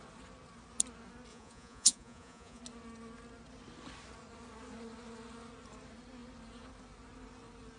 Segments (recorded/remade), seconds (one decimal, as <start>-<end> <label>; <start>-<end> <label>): 0.0-1.3 recorded; 1.3-2.6 remade; 2.6-7.8 recorded